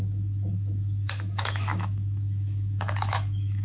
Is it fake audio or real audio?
fake